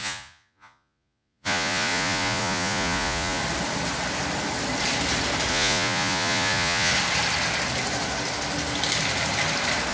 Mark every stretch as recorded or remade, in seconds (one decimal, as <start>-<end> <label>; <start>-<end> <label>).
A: 0.0-3.4 remade; 3.4-5.5 recorded; 5.5-6.9 remade; 6.9-9.9 recorded